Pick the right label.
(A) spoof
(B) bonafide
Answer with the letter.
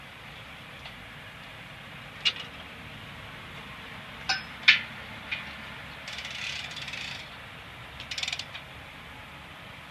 B